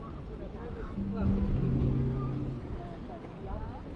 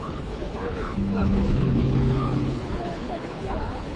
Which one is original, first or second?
first